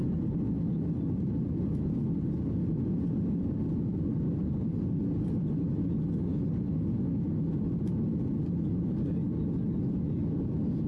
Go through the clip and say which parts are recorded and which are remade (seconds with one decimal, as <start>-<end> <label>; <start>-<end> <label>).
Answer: 0.0-10.9 recorded

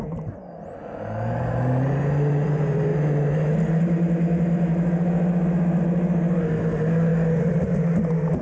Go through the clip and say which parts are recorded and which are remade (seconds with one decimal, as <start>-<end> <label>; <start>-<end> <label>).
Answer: 0.0-8.4 recorded

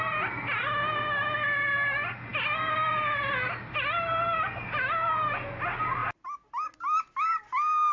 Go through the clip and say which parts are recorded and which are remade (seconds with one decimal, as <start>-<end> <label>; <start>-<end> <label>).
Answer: 0.0-7.9 recorded